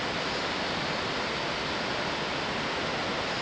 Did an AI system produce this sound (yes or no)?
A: no